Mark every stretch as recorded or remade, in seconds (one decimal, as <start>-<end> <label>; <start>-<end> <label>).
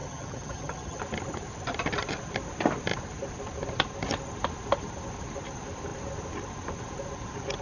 0.0-1.0 remade; 1.0-7.6 recorded